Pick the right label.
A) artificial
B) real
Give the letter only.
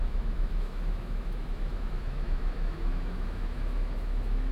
A